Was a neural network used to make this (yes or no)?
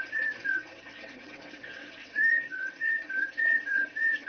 yes